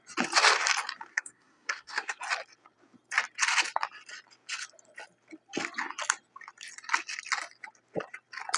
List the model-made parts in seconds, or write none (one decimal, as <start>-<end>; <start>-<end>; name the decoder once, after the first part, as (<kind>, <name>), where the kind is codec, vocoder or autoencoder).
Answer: 1.1-2.2 (codec, SNAC)